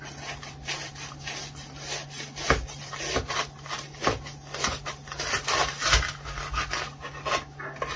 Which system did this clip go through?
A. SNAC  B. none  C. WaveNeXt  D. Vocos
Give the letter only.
B